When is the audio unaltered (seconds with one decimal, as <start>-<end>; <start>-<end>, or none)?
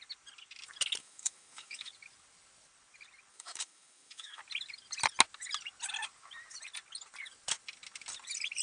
0.0-1.0; 1.9-3.3; 4.4-8.6